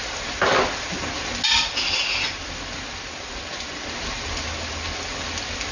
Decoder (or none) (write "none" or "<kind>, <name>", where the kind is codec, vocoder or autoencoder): none